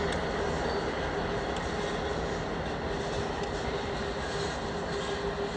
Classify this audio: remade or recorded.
recorded